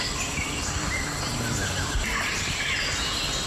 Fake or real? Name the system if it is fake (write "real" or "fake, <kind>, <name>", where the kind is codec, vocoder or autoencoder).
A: real